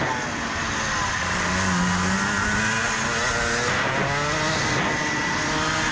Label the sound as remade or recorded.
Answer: recorded